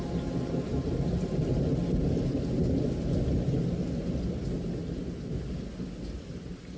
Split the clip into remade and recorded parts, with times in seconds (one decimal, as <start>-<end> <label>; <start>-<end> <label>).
0.0-6.8 recorded